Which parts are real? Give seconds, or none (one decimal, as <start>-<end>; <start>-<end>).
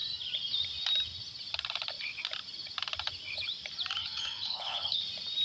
0.0-4.0; 5.0-5.4